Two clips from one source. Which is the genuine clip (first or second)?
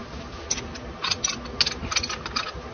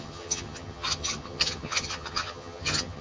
first